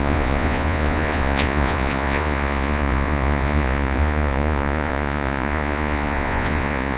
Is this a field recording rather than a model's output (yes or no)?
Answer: no